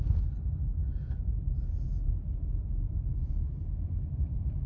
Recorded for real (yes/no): no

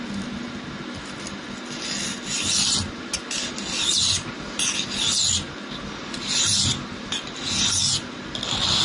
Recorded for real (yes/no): yes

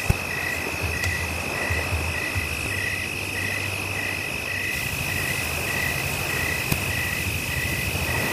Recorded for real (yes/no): yes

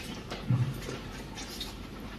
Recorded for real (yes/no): no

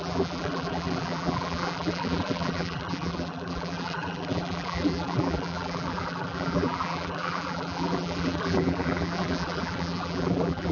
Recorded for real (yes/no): no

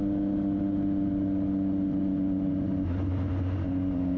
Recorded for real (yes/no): yes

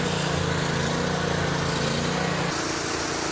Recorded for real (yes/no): yes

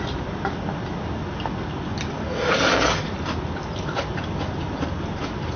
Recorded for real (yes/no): yes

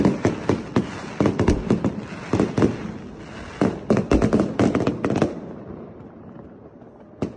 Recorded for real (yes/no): yes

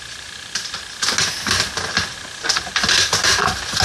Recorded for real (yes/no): yes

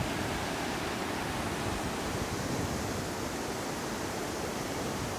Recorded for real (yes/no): no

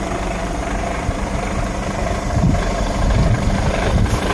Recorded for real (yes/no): no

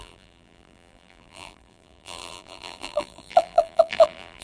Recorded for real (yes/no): no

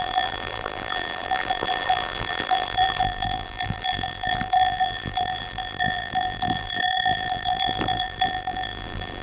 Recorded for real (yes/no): no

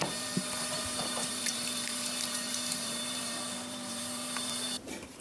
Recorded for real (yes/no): no